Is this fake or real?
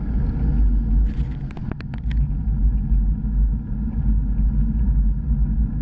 real